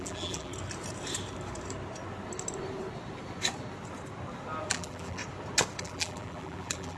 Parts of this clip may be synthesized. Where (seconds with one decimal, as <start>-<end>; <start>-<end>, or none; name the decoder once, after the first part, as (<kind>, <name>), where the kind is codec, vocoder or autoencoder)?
0.0-0.5 (vocoder, BigVGAN v2); 4.7-5.2; 5.8-7.0

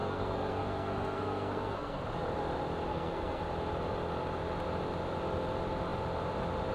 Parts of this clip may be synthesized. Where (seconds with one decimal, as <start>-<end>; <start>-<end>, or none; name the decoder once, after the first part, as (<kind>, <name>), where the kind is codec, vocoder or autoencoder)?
0.0-2.0 (codec, SNAC); 2.9-3.4

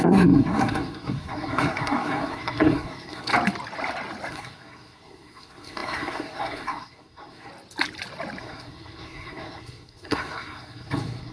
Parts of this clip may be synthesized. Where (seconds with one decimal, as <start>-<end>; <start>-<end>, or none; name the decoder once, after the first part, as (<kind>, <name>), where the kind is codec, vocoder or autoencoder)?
0.0-3.3 (codec, SNAC); 4.3-7.5; 8.4-11.3

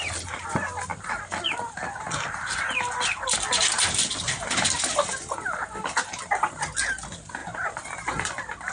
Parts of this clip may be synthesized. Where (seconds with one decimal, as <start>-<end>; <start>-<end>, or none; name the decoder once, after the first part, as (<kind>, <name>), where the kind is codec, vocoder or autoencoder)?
none

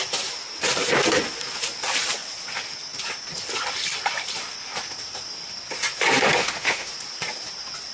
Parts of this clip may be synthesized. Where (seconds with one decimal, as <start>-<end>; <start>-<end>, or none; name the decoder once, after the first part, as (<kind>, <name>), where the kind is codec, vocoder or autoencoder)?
6.4-6.9 (autoencoder, DAC-VAE)